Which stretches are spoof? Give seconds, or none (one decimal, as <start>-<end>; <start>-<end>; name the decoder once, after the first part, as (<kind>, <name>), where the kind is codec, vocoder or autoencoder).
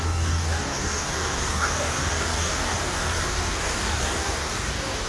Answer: 0.0-5.1 (codec, DAC)